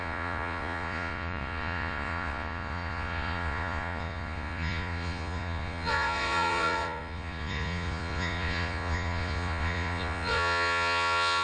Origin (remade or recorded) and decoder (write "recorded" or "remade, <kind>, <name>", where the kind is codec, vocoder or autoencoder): remade, vocoder, Vocos